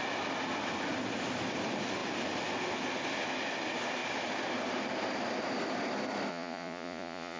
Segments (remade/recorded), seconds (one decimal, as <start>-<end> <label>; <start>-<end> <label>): 0.0-6.3 recorded; 6.3-7.4 remade